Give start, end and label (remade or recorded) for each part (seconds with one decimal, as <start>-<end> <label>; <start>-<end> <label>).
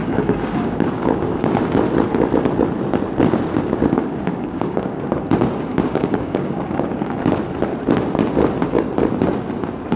0.0-1.5 remade; 1.5-3.5 recorded; 3.5-5.1 remade; 5.1-5.7 recorded; 5.7-7.2 remade; 7.2-10.0 recorded